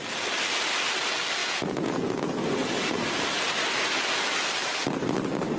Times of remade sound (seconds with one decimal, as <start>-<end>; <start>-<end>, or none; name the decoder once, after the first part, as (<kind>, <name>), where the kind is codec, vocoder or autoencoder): 1.4-2.2 (vocoder, Vocos)